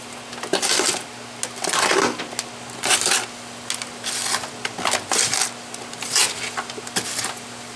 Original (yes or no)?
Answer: yes